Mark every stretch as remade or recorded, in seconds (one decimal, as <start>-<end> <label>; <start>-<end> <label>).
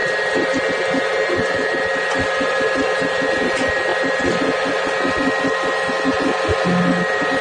0.0-0.5 remade; 0.5-7.4 recorded